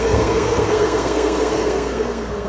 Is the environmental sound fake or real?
fake